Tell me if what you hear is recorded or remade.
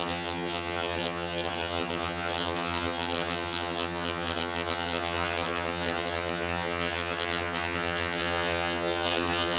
remade